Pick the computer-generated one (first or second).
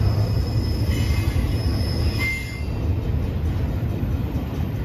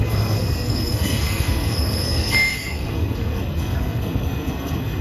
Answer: second